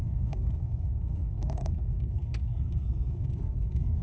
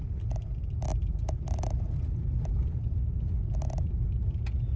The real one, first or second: second